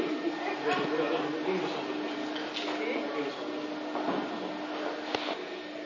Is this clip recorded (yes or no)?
yes